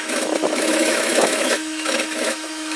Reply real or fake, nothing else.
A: fake